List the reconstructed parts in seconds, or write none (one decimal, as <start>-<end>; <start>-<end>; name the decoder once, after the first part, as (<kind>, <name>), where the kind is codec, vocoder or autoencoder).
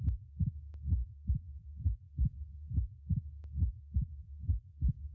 none